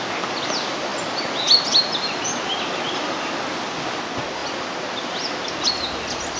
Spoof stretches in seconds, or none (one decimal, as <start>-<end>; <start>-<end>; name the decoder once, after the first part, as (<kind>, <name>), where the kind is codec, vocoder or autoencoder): none